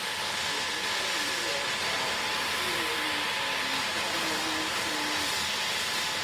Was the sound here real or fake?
real